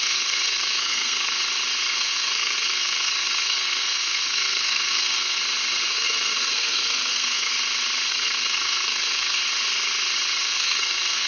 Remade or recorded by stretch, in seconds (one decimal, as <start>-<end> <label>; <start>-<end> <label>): 0.0-1.4 remade; 1.4-1.9 recorded; 1.9-5.4 remade; 5.4-5.9 recorded; 5.9-7.5 remade; 7.5-8.1 recorded; 8.1-9.4 remade; 9.4-10.4 recorded; 10.4-11.3 remade